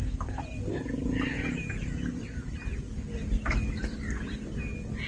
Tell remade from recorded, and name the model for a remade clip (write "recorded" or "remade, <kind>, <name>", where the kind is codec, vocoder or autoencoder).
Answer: recorded